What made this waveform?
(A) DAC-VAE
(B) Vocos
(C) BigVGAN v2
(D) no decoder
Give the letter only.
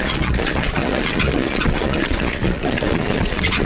B